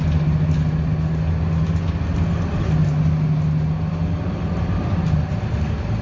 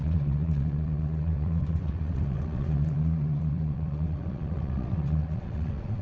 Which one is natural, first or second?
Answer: first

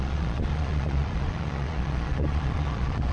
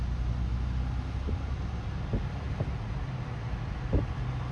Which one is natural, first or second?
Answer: second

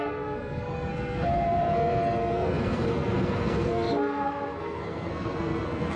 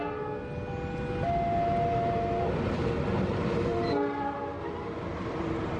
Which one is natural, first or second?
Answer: second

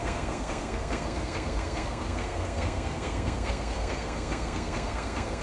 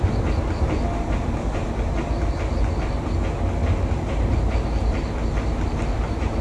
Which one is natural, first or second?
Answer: second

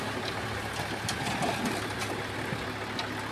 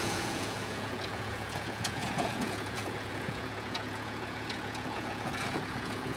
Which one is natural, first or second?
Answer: first